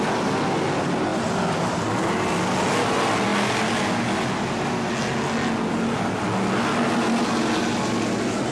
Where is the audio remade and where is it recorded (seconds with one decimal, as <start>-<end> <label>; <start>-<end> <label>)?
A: 0.0-8.5 recorded